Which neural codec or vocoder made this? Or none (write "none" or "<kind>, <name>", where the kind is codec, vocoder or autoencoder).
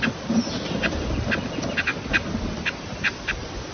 none